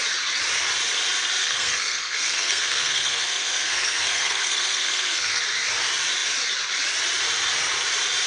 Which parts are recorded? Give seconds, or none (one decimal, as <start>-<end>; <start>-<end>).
0.0-1.4; 5.4-8.3